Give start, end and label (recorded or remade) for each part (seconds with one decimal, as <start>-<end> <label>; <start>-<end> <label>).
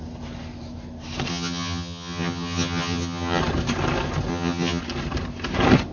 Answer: 0.0-1.3 recorded; 1.3-3.4 remade; 3.4-4.3 recorded; 4.3-4.8 remade; 4.8-5.9 recorded